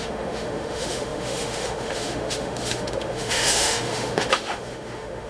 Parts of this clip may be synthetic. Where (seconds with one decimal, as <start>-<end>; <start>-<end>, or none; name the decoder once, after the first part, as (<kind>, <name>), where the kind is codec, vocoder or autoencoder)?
0.0-5.3 (autoencoder, DAC-VAE)